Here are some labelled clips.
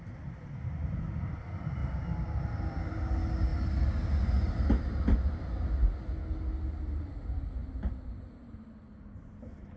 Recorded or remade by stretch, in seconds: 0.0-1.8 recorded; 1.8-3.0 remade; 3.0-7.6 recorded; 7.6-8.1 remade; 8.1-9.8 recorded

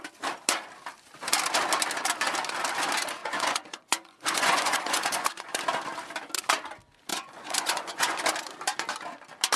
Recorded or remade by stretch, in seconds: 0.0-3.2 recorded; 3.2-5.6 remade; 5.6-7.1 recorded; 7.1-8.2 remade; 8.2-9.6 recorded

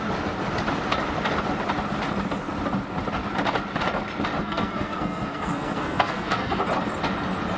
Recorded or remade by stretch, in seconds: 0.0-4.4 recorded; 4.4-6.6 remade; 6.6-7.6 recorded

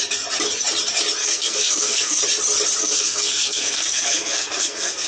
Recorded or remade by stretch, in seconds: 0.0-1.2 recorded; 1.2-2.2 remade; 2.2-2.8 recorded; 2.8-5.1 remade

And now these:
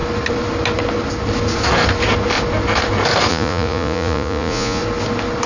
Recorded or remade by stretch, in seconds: 0.0-3.3 recorded; 3.3-4.8 remade; 4.8-5.5 recorded

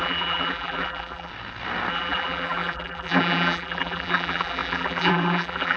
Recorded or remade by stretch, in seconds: 0.0-1.3 remade; 1.3-1.9 recorded; 1.9-5.8 remade

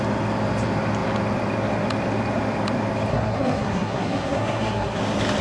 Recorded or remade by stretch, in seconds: 0.0-3.1 recorded; 3.1-5.0 remade; 5.0-5.4 recorded

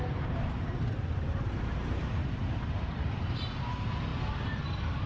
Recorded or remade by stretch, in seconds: 0.0-2.2 remade; 2.2-2.9 recorded; 2.9-5.1 remade